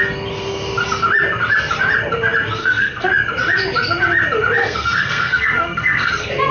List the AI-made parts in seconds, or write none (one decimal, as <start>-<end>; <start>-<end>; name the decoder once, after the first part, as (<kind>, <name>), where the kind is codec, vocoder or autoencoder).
2.6-3.1 (codec, SNAC); 4.6-6.1